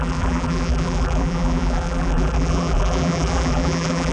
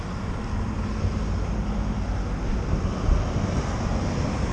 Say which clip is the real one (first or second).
second